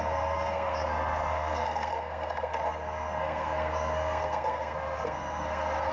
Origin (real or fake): fake